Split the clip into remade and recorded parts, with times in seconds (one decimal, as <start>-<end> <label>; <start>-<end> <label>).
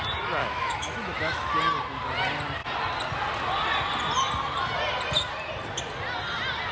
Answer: 0.0-0.4 recorded; 0.4-1.5 remade; 1.5-6.7 recorded